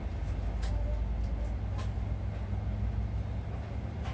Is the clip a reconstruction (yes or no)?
no